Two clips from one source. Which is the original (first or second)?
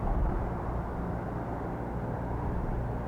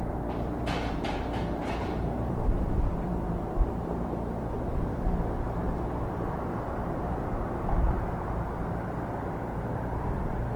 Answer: first